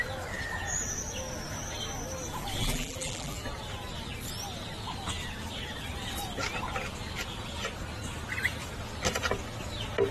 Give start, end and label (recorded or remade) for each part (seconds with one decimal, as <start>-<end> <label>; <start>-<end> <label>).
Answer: 0.0-2.6 recorded; 2.6-3.4 remade; 3.4-10.1 recorded